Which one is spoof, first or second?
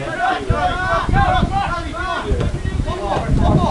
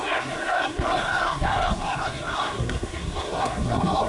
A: second